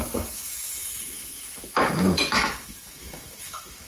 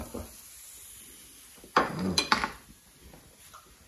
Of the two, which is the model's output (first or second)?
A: first